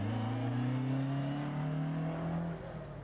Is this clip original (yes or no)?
yes